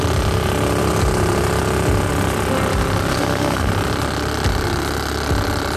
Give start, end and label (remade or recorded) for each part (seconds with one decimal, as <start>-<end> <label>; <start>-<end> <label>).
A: 0.0-3.1 recorded; 3.1-3.7 remade; 3.7-5.8 recorded